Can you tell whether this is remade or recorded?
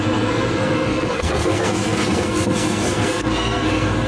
remade